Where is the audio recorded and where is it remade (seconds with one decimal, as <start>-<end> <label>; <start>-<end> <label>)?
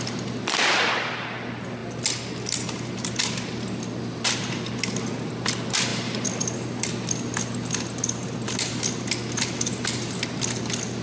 0.0-11.0 recorded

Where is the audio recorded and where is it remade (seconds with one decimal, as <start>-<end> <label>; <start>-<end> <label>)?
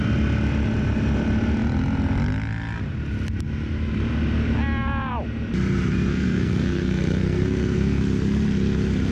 0.0-6.1 recorded; 6.1-8.0 remade; 8.0-9.1 recorded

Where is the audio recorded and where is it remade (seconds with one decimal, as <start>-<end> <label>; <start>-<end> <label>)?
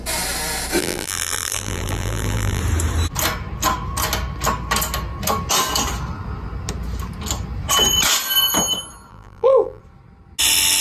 0.0-0.8 recorded; 0.8-2.6 remade; 2.6-9.1 recorded; 9.1-9.8 remade; 9.8-10.8 recorded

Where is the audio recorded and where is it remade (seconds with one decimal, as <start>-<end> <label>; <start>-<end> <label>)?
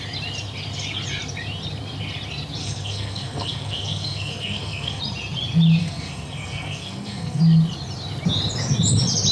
0.0-2.6 recorded; 2.6-5.0 remade; 5.0-5.8 recorded; 5.8-7.4 remade; 7.4-9.3 recorded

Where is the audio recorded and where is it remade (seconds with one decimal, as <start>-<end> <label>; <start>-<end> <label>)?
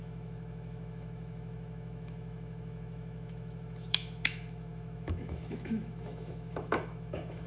0.0-7.5 remade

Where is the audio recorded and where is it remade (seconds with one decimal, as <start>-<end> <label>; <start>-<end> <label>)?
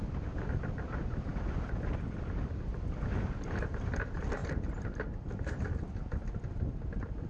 0.0-7.3 recorded